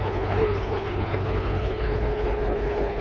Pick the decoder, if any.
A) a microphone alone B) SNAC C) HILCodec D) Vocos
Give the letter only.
C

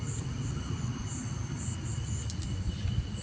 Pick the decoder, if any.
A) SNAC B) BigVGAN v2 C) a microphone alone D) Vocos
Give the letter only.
B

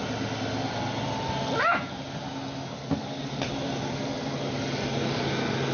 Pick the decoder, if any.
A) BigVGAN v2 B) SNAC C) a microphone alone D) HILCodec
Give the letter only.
C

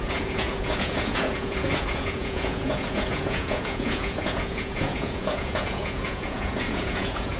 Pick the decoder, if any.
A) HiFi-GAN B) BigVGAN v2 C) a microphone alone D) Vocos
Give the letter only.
D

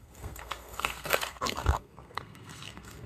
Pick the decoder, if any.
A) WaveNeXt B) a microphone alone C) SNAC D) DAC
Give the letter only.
C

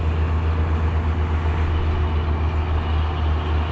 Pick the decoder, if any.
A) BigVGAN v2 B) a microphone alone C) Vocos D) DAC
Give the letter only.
B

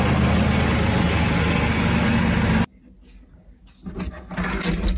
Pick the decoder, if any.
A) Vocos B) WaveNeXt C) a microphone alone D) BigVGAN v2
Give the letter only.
C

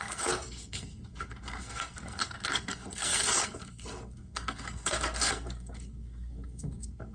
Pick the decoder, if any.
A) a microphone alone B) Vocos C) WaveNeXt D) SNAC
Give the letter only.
D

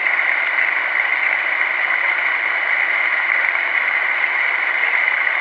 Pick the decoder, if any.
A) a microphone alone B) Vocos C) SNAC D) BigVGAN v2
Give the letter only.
D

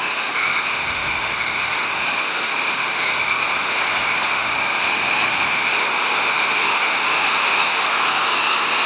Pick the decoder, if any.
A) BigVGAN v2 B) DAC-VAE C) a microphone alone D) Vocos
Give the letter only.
B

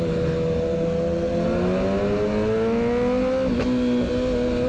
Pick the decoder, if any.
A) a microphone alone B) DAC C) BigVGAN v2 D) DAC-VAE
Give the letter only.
A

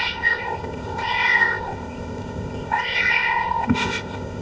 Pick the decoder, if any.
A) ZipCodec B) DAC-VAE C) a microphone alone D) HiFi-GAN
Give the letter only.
A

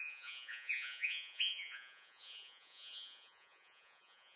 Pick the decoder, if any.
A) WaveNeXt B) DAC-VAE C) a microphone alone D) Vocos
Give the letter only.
D